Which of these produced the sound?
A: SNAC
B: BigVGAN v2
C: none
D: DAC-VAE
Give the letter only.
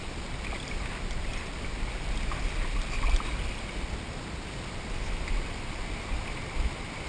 C